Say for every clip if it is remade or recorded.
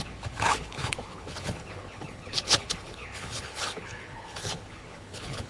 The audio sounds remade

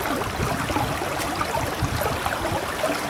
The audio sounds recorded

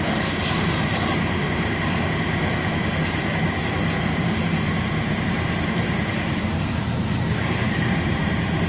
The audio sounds remade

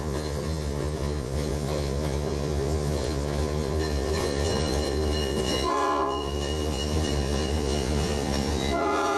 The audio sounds remade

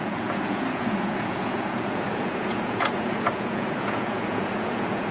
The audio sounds remade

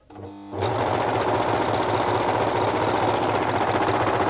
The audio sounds recorded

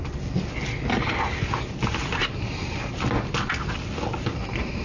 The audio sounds recorded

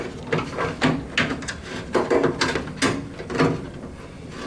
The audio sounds recorded